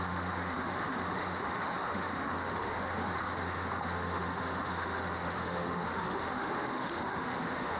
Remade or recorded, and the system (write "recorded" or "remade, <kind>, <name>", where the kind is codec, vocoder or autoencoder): remade, autoencoder, DAC-VAE